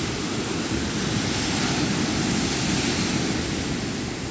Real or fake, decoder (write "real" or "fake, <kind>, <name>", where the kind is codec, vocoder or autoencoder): real